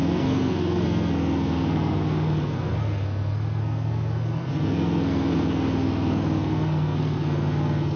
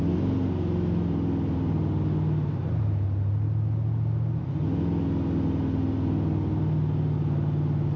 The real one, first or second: second